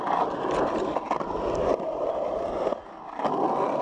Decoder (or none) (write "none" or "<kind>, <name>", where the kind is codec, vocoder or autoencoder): none